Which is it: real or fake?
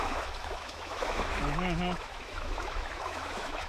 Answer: fake